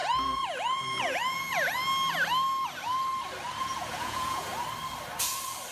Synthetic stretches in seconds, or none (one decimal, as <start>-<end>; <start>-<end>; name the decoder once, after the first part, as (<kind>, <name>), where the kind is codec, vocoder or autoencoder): 0.0-1.8 (vocoder, Vocos); 3.6-4.5